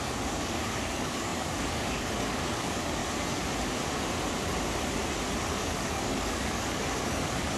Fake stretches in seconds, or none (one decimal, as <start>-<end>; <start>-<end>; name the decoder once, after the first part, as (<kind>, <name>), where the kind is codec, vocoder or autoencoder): 0.0-3.0 (codec, DAC); 5.5-7.6